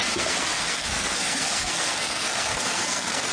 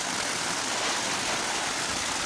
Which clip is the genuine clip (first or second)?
second